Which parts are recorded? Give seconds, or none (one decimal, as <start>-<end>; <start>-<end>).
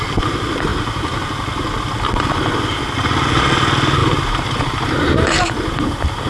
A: 0.0-4.0; 5.4-6.3